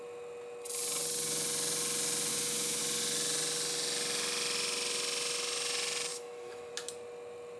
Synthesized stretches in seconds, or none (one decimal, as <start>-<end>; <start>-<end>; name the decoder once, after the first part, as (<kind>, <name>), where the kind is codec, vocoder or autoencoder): 2.3-2.8 (autoencoder, DAC-VAE); 6.1-6.7